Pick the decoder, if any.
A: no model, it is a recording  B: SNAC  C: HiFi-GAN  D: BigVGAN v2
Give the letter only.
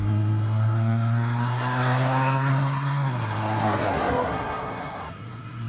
B